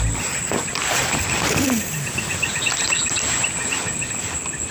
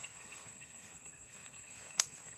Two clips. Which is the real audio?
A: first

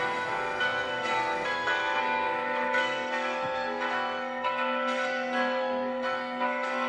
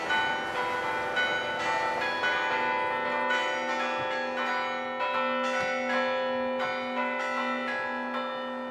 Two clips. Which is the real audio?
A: second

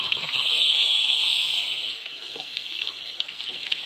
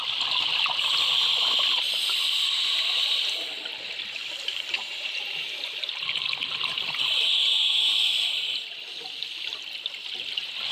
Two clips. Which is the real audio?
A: second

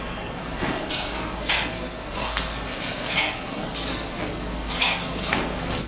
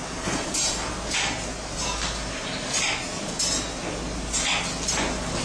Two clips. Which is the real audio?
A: second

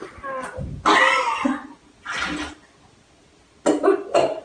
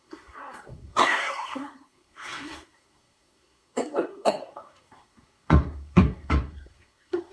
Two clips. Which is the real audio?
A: first